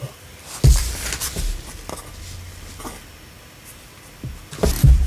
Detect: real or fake real